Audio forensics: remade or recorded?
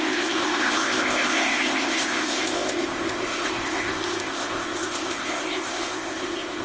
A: remade